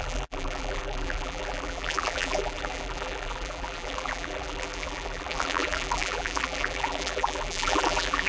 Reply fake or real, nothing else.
fake